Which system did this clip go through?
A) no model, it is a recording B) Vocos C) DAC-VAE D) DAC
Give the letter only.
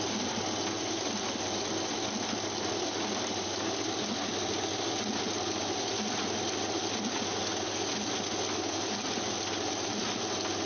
A